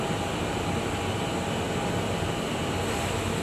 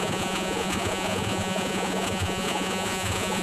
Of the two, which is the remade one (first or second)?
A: second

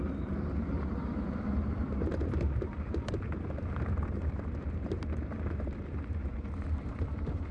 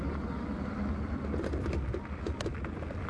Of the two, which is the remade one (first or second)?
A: first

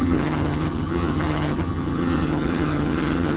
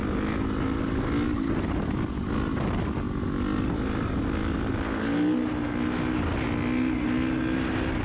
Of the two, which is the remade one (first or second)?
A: first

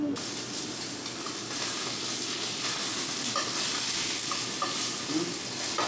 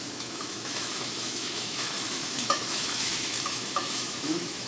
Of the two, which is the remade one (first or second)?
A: second